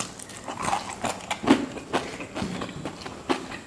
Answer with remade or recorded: recorded